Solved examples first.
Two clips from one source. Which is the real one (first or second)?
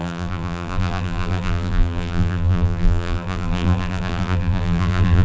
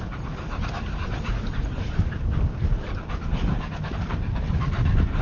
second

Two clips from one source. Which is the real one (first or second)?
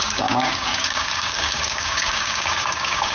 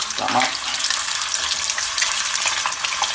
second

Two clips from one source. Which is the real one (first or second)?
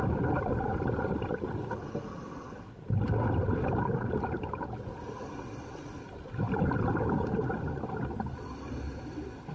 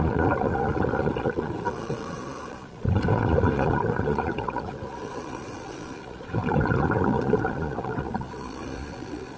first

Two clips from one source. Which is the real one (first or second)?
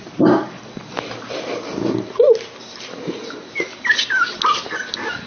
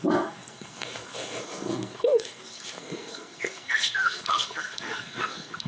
first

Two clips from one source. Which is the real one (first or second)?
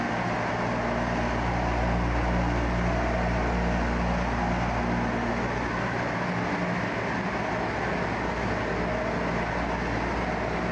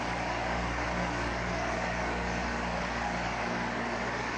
first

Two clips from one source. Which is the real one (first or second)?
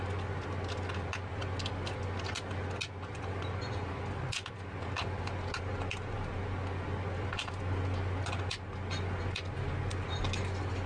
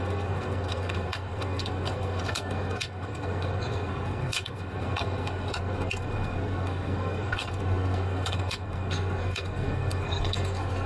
first